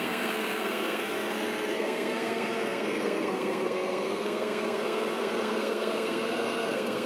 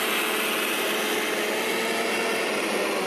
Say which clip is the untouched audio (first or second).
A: second